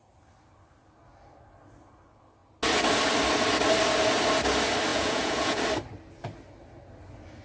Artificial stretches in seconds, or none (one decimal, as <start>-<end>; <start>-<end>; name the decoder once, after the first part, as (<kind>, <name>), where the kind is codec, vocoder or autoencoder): 4.9-5.6 (vocoder, Vocos)